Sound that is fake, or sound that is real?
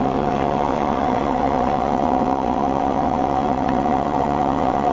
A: fake